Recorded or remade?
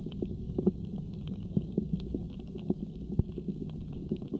remade